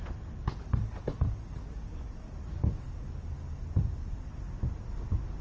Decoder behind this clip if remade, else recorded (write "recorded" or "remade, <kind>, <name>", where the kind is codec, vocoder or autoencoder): recorded